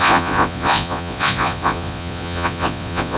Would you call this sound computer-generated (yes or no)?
yes